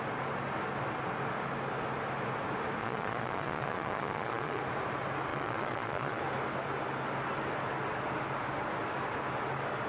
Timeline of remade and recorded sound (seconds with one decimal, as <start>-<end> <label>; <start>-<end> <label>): 0.0-2.8 recorded; 2.8-4.6 remade; 4.6-5.3 recorded; 5.3-6.2 remade; 6.2-9.9 recorded